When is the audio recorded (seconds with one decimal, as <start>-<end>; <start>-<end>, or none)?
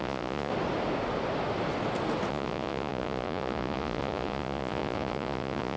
0.5-2.3